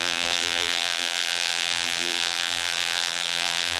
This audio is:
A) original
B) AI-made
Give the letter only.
B